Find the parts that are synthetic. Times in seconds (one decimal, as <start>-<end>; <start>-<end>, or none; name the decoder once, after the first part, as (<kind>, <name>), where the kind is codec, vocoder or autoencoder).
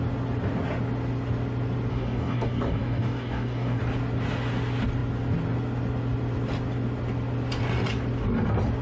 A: 1.9-3.8 (codec, DAC)